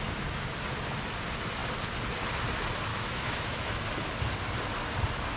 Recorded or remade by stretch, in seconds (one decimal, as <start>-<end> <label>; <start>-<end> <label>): 0.0-2.9 recorded; 2.9-3.8 remade; 3.8-5.4 recorded